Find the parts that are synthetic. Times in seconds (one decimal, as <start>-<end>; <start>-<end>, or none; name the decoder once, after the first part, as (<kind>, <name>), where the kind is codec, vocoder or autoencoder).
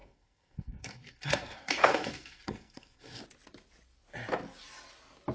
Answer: 0.0-3.2 (codec, SNAC)